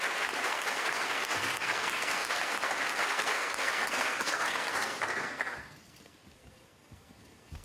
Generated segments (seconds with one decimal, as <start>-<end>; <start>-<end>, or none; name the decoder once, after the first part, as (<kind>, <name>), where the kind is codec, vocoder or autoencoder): 0.0-7.6 (codec, SNAC)